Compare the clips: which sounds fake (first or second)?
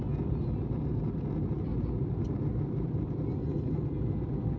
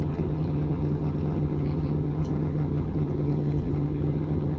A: second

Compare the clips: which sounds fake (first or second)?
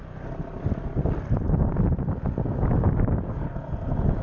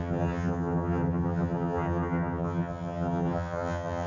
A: second